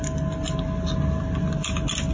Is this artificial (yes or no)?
no